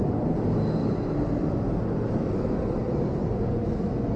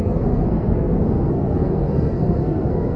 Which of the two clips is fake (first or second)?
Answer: second